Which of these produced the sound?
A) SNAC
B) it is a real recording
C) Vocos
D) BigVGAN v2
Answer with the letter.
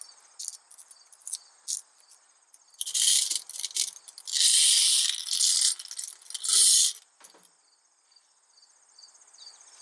B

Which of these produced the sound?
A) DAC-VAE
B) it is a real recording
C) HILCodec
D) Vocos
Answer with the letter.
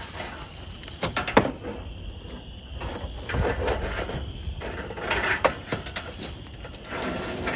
B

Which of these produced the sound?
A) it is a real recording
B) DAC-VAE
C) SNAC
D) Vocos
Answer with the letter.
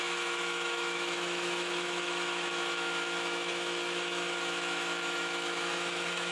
B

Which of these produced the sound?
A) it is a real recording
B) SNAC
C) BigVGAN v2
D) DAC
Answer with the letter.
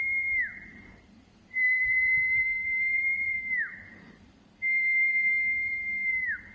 C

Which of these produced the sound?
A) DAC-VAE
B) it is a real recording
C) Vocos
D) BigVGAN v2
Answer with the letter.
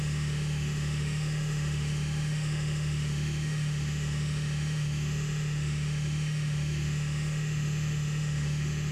A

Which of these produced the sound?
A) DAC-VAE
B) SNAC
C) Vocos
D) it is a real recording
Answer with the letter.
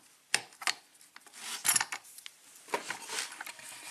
D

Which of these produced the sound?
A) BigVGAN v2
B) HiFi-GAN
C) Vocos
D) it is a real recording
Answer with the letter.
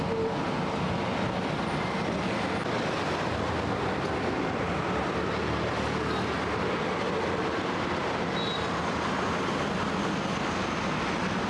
D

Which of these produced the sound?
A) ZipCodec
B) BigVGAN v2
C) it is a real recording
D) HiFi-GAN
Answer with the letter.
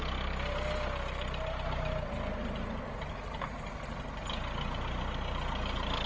C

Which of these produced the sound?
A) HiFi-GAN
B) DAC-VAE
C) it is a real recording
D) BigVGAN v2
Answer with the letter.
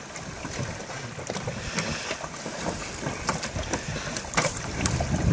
C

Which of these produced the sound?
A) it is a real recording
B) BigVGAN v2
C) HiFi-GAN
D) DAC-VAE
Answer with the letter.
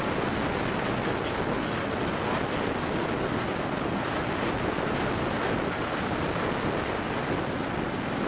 A